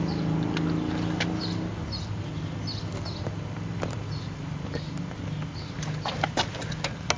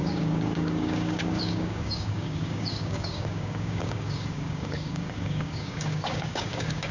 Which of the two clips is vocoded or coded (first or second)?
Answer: second